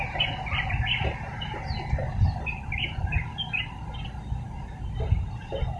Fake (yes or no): no